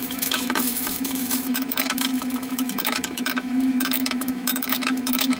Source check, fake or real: fake